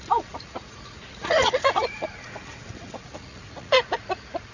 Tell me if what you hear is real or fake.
fake